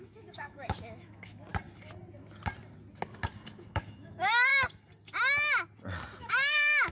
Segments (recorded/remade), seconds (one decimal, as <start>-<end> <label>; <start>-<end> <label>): 0.0-1.5 remade; 1.5-3.7 recorded; 3.7-4.5 remade; 4.5-6.2 recorded; 6.2-6.9 remade